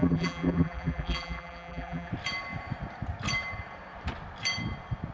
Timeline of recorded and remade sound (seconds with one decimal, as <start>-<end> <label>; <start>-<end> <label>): 0.0-2.1 remade; 2.1-5.1 recorded